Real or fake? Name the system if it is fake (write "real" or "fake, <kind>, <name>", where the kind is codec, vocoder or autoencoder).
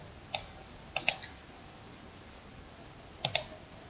real